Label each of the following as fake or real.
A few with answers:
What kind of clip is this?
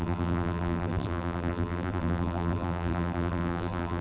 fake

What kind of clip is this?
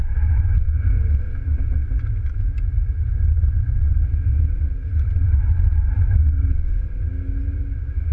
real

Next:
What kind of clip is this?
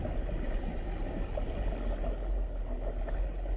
real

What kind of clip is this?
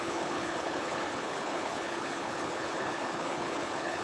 fake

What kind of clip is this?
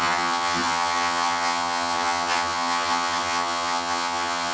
fake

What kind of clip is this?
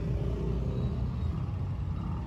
real